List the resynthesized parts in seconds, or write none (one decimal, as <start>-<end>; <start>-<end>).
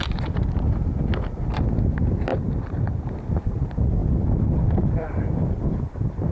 2.3-3.1